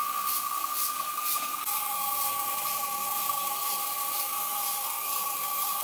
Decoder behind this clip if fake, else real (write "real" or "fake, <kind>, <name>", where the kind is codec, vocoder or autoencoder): fake, codec, SNAC